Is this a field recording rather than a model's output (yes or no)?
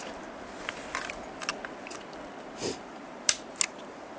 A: yes